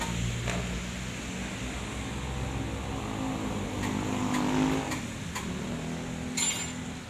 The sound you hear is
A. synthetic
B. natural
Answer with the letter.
B